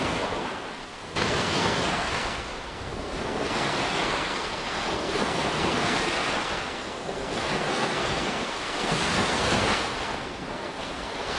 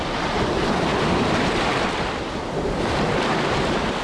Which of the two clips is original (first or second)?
second